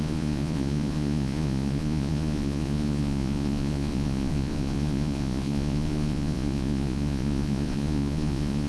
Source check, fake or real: fake